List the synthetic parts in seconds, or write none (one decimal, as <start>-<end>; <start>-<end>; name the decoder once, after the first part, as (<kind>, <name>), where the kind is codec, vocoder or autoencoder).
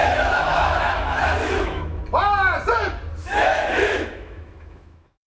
0.0-2.0 (autoencoder, DAC-VAE); 3.2-5.3